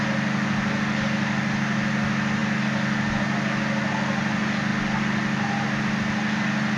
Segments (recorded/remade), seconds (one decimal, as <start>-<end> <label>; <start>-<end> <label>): 0.0-6.8 recorded